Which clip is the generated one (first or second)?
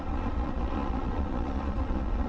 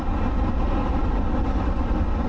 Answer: first